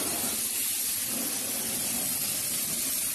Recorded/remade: recorded